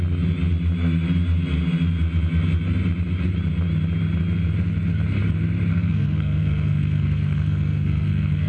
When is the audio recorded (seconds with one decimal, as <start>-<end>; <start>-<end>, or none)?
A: 0.0-5.7